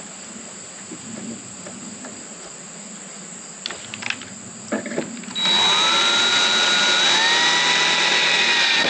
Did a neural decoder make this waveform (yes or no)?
no